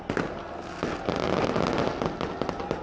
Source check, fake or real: real